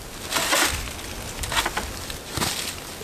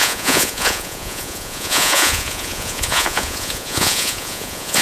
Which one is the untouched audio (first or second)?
first